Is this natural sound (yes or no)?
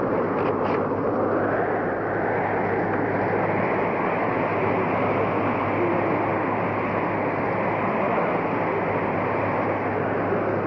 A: yes